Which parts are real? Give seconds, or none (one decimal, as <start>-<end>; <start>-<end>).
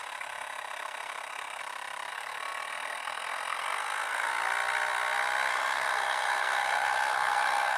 1.6-2.1; 4.3-5.5